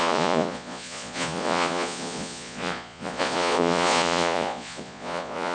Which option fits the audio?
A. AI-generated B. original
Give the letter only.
A